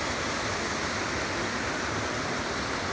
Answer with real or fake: real